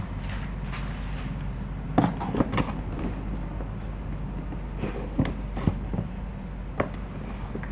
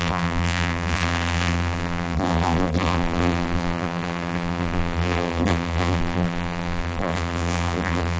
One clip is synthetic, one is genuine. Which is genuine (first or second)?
first